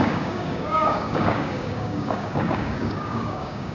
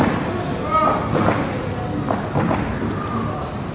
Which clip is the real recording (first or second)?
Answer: second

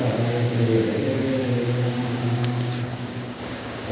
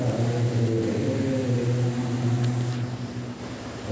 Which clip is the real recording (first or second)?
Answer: second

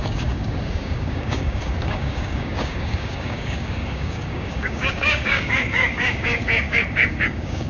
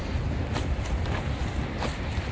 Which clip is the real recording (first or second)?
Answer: second